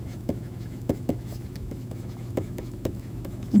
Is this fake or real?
fake